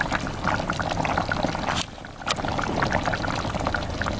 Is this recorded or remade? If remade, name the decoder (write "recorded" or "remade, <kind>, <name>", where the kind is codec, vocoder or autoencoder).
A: recorded